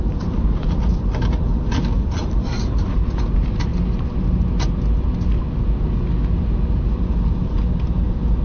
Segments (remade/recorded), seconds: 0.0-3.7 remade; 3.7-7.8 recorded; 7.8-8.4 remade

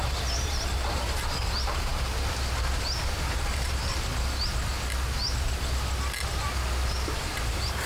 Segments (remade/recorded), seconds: 0.0-1.9 remade; 1.9-2.6 recorded; 2.6-4.1 remade; 4.1-6.9 recorded; 6.9-7.9 remade

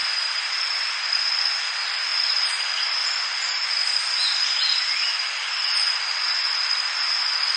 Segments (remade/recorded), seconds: 0.0-1.1 remade; 1.1-7.6 recorded

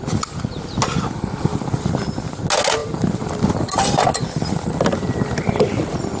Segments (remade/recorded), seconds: 0.0-2.8 recorded; 2.8-3.3 remade; 3.3-6.2 recorded